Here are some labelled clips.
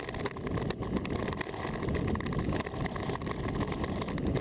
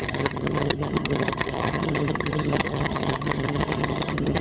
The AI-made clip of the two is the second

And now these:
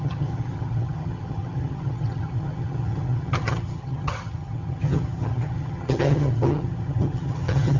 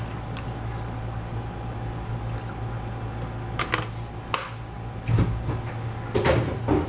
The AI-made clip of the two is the first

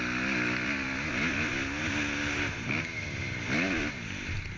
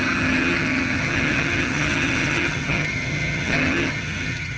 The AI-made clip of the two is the second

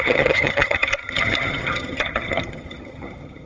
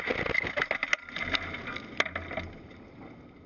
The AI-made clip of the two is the first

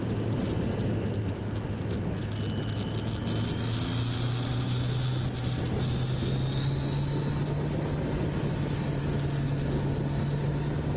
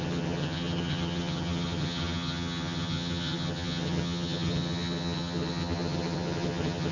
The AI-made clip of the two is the second